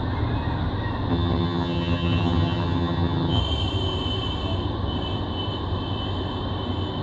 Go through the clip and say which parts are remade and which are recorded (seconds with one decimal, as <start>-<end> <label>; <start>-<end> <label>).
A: 0.0-1.1 recorded; 1.1-3.4 remade; 3.4-7.0 recorded